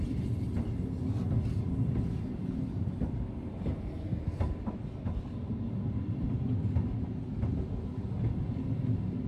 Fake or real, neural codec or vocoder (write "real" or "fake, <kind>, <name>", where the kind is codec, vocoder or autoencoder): real